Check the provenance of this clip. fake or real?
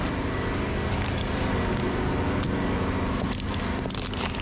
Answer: real